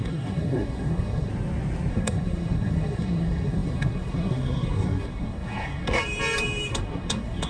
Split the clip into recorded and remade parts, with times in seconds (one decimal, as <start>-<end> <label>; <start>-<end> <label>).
0.0-1.3 remade; 1.3-1.9 recorded; 1.9-6.0 remade; 6.0-6.7 recorded; 6.7-7.5 remade